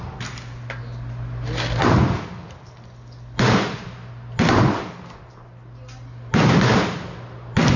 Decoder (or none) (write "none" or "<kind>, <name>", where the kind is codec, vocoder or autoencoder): none